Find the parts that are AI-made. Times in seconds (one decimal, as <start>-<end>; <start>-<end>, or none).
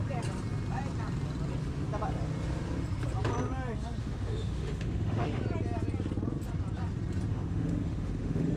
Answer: 4.0-5.4; 7.3-8.6